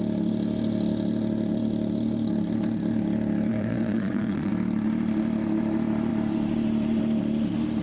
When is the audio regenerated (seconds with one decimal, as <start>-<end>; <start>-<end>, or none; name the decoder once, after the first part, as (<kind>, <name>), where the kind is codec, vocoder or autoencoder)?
3.5-4.5 (vocoder, Vocos)